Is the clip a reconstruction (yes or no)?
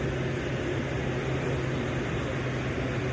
no